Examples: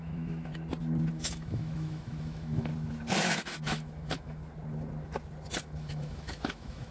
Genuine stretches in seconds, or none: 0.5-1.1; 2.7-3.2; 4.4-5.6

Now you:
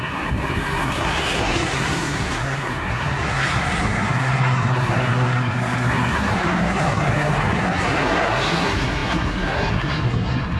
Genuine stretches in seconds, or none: none